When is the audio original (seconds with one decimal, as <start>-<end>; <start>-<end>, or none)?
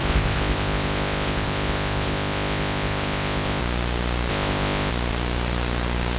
3.6-4.3; 4.9-6.2